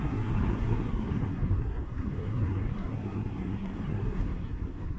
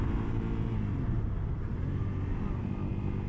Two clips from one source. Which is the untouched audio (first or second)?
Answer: second